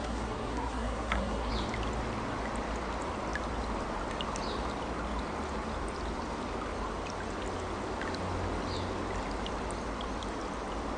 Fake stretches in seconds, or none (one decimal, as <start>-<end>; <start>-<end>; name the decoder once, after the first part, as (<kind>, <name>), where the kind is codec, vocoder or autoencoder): 0.0-1.5 (codec, SNAC)